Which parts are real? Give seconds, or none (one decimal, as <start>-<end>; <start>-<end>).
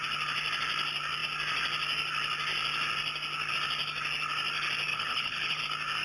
0.0-4.9; 5.6-6.0